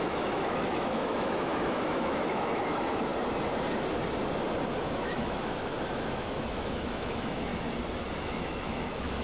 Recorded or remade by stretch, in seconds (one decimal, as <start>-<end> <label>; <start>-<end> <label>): 0.0-3.1 remade; 3.1-4.8 recorded; 4.8-7.5 remade; 7.5-8.2 recorded; 8.2-9.2 remade